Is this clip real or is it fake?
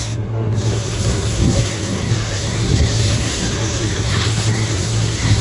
fake